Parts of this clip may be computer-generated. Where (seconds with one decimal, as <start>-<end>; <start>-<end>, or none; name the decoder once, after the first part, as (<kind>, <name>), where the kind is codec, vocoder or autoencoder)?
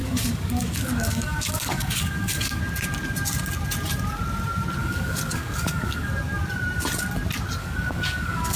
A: 0.0-2.6 (codec, DAC); 4.8-6.1; 7.6-8.6